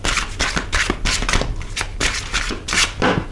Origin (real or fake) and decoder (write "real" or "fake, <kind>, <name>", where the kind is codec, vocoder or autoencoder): real